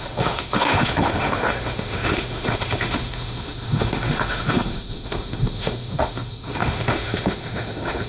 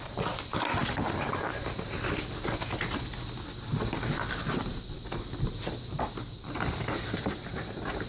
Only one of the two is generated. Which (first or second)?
first